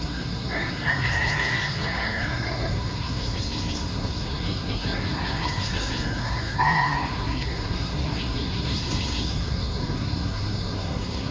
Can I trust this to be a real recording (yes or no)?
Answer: no